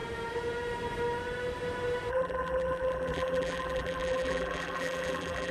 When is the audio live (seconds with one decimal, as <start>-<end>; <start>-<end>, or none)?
0.0-2.1